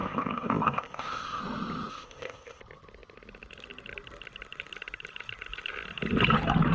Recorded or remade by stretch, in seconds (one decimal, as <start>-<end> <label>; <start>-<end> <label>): 0.0-1.4 remade; 1.4-1.9 recorded; 1.9-2.6 remade; 2.6-6.7 recorded